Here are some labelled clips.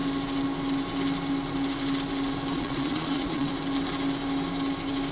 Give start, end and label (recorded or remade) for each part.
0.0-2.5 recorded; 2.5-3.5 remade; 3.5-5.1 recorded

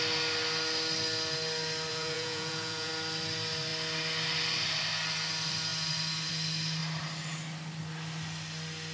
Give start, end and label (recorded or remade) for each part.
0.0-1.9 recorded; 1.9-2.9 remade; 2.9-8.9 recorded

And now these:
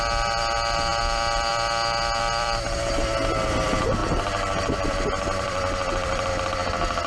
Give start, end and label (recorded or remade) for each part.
0.0-2.2 recorded; 2.2-2.9 remade; 2.9-4.0 recorded; 4.0-6.3 remade; 6.3-7.1 recorded

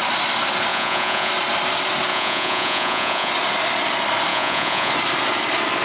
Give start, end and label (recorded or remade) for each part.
0.0-0.7 recorded; 0.7-1.3 remade; 1.3-2.1 recorded; 2.1-3.3 remade; 3.3-4.3 recorded; 4.3-4.9 remade; 4.9-5.8 recorded